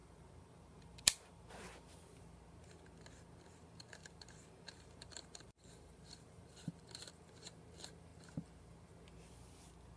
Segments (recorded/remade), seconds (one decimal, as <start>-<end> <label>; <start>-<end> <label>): 0.0-1.5 remade; 1.5-4.0 recorded; 4.0-6.8 remade; 6.8-10.0 recorded